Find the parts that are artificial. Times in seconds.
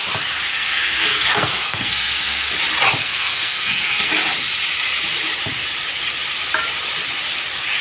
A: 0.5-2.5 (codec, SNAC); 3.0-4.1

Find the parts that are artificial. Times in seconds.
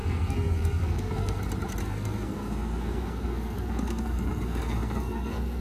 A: 0.0-1.4 (codec, SNAC); 1.8-5.6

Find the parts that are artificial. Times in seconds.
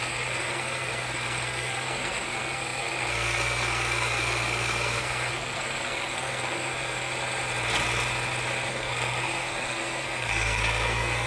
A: 0.0-7.1 (codec, SNAC); 8.7-11.3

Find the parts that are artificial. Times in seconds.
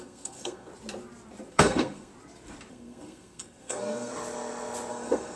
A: 0.0-0.7 (codec, SNAC); 1.5-2.1; 2.7-4.1; 4.9-5.4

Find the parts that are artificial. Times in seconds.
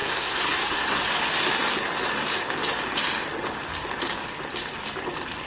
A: 0.0-1.0 (codec, SNAC)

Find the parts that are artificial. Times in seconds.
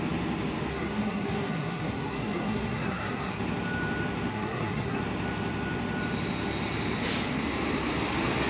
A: 0.7-3.4 (codec, SNAC); 4.3-5.0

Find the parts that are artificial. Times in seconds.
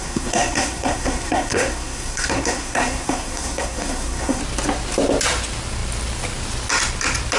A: 0.0-4.4 (codec, SNAC)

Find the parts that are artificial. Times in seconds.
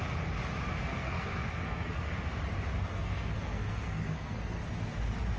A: 0.9-2.2 (codec, SNAC); 2.9-4.6